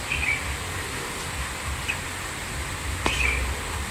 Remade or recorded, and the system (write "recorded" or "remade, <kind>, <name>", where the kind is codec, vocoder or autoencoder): recorded